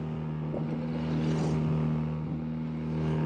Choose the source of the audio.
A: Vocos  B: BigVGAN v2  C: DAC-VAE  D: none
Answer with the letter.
D